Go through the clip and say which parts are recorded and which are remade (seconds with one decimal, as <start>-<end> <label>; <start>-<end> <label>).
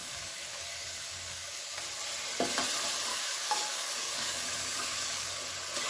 0.0-1.8 remade; 1.8-3.1 recorded; 3.1-5.4 remade; 5.4-5.9 recorded